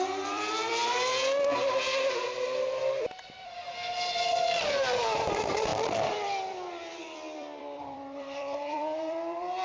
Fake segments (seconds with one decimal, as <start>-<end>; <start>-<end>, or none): 0.0-1.1; 4.5-9.6